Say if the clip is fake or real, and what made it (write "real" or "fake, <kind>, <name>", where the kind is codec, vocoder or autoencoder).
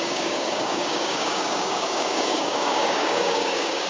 fake, codec, DAC